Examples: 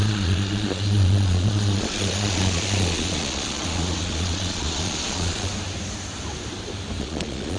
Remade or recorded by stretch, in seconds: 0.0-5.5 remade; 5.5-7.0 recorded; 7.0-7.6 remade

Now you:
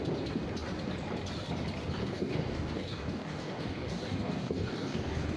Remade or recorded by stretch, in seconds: 0.0-2.0 recorded; 2.0-5.4 remade

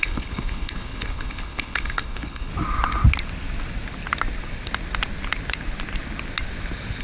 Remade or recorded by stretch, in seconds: 0.0-2.5 remade; 2.5-7.0 recorded

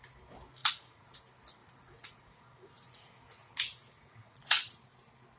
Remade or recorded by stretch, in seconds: 0.0-0.6 recorded; 0.6-1.2 remade; 1.2-1.6 recorded; 1.6-4.8 remade; 4.8-5.4 recorded

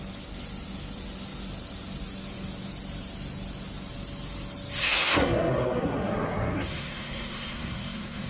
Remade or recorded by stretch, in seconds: 0.0-4.8 recorded; 4.8-8.3 remade

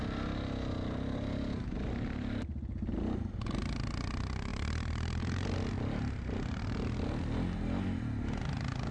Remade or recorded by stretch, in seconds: 0.0-8.9 recorded

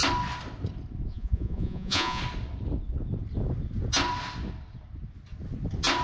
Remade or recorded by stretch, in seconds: 0.0-1.1 recorded; 1.1-2.2 remade; 2.2-6.0 recorded

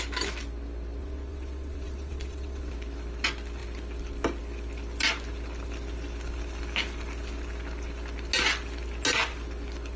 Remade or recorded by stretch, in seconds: 0.0-1.0 recorded; 1.0-2.7 remade; 2.7-10.0 recorded